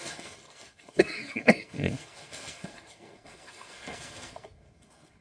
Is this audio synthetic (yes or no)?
yes